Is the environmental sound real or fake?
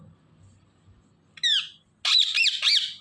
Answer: real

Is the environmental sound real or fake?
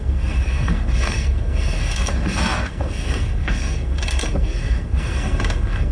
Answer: fake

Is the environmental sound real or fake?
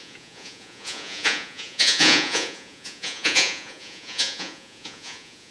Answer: fake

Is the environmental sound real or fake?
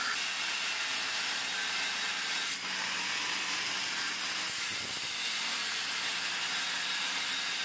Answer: real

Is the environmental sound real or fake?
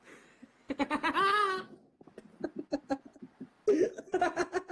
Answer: real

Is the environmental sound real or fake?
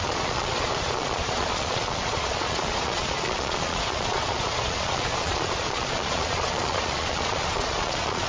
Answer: fake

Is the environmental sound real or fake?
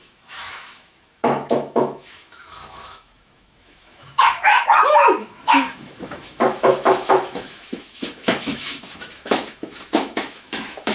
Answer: fake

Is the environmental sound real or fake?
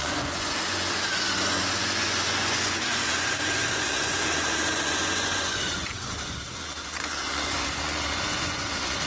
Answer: fake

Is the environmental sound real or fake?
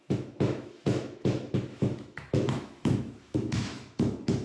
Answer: fake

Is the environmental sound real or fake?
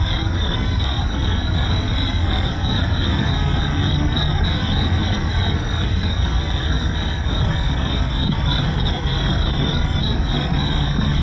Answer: fake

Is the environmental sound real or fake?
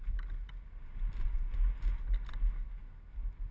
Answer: real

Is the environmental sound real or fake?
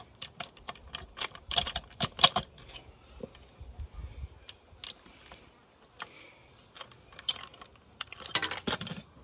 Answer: real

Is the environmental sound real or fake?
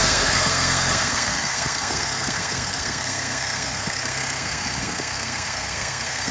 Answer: fake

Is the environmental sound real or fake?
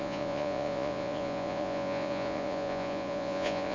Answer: fake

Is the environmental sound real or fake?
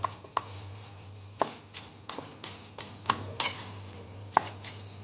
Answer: real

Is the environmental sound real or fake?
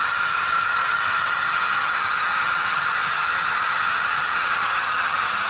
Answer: fake